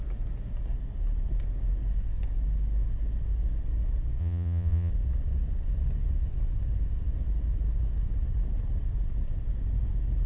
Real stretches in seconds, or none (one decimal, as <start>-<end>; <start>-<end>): 0.0-4.2; 4.9-10.3